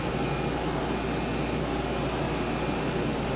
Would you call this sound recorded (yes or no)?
yes